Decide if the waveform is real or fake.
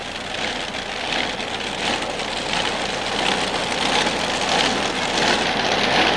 real